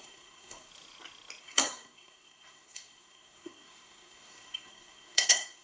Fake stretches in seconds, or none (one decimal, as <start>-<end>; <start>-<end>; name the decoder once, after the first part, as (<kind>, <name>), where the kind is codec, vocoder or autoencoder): 0.0-0.7 (codec, SNAC); 1.4-5.6